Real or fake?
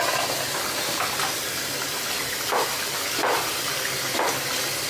real